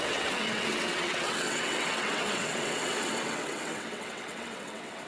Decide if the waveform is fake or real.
fake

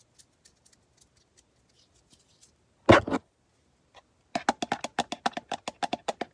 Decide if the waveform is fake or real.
real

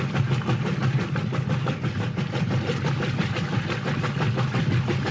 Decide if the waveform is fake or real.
real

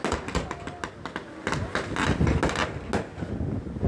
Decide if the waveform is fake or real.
real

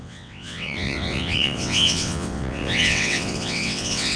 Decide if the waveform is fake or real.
fake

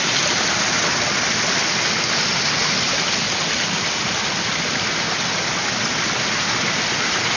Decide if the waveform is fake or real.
real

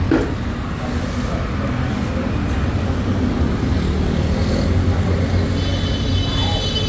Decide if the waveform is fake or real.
real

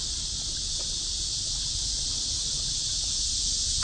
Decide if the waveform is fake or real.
real